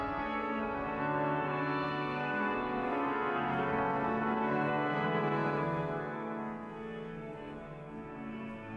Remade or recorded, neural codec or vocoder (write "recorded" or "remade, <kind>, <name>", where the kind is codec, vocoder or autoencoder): remade, codec, SNAC